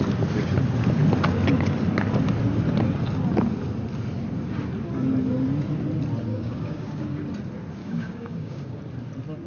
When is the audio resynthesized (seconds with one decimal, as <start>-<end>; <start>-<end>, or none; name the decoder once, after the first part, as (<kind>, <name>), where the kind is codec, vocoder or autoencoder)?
6.3-7.0 (codec, DAC); 7.8-8.8